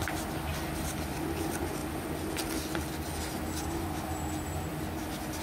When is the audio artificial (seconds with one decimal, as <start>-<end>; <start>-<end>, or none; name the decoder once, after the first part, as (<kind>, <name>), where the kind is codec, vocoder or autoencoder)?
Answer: 0.5-1.2 (vocoder, BigVGAN v2)